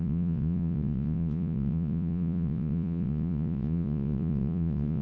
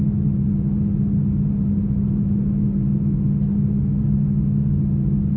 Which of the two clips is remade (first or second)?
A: first